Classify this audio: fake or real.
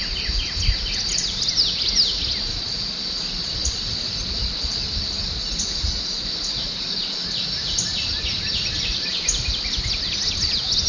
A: real